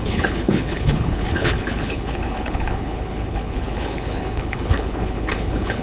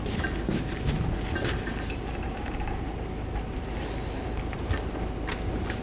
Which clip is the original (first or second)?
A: second